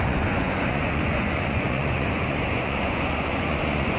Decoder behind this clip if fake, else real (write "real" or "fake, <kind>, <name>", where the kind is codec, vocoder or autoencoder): fake, vocoder, Vocos